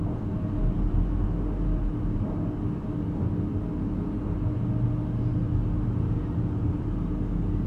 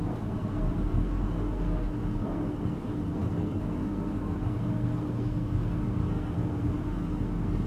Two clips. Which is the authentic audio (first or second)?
first